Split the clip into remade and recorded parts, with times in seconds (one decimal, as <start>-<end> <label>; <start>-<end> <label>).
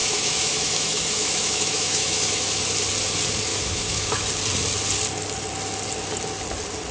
0.0-2.6 remade; 2.6-3.5 recorded; 3.5-4.3 remade; 4.3-6.9 recorded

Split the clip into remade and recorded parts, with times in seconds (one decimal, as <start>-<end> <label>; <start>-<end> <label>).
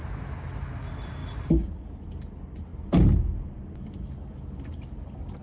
0.0-5.4 recorded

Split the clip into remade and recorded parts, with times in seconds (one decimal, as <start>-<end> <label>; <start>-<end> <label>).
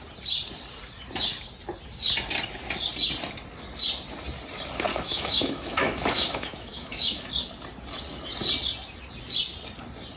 0.0-4.9 recorded; 4.9-7.3 remade; 7.3-10.2 recorded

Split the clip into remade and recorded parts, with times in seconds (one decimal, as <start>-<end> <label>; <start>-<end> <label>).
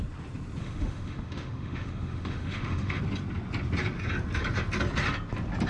0.0-0.6 recorded; 0.6-3.0 remade; 3.0-5.7 recorded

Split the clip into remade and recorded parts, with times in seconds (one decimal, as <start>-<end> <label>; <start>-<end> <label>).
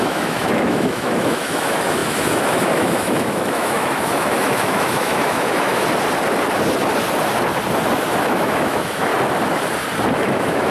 0.0-5.8 remade; 5.8-8.3 recorded; 8.3-9.1 remade; 9.1-10.1 recorded; 10.1-10.7 remade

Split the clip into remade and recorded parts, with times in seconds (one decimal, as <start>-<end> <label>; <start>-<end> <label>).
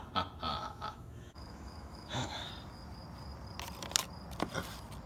0.0-0.5 recorded; 0.5-2.5 remade; 2.5-5.1 recorded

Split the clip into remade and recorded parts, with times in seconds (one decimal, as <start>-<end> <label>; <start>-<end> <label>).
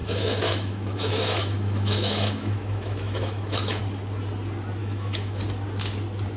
0.0-3.8 remade; 3.8-4.8 recorded; 4.8-5.4 remade; 5.4-6.4 recorded